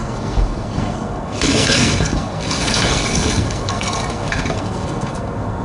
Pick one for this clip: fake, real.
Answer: fake